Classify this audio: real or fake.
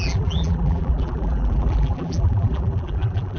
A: fake